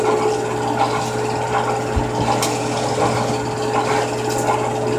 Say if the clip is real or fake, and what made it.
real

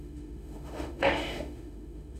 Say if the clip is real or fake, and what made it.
fake, autoencoder, DAC-VAE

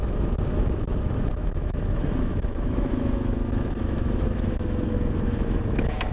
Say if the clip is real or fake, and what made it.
fake, autoencoder, DAC-VAE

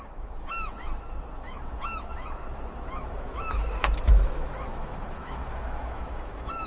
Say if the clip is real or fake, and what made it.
fake, autoencoder, DAC-VAE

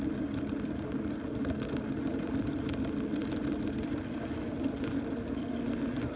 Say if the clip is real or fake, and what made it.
real